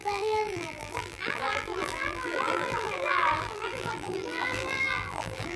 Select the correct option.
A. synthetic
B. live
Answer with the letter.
A